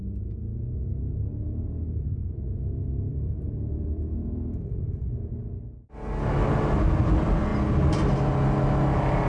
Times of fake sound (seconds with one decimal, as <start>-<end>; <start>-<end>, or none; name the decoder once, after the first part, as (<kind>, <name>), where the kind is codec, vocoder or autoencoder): 3.1-5.3 (vocoder, BigVGAN v2)